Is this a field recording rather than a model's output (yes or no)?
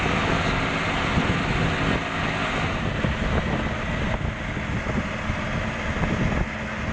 yes